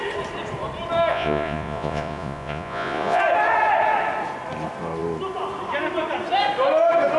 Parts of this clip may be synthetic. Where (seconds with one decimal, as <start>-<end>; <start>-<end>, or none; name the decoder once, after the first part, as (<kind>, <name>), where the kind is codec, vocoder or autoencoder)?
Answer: 1.1-3.2 (vocoder, Vocos)